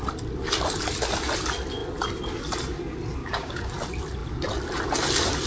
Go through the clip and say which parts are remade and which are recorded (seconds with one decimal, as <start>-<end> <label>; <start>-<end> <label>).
0.0-3.2 recorded; 3.2-3.7 remade; 3.7-5.5 recorded